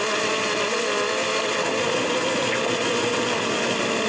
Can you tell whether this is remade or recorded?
recorded